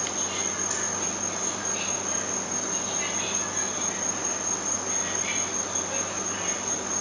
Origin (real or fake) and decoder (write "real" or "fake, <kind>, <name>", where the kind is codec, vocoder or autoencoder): real